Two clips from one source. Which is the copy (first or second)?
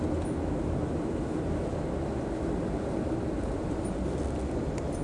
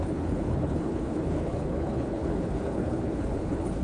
second